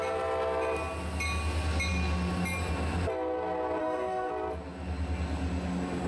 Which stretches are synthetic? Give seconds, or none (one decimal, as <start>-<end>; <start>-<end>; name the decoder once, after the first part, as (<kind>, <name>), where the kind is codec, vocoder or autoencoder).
3.8-4.3 (codec, DAC)